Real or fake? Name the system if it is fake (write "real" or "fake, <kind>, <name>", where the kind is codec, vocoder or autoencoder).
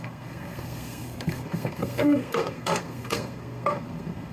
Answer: fake, codec, SNAC